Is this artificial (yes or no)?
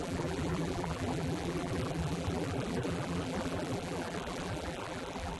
yes